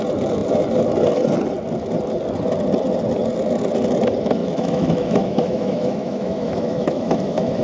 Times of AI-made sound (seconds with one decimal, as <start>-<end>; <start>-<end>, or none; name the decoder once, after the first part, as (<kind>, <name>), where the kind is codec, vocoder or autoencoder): 4.4-7.6 (autoencoder, DAC-VAE)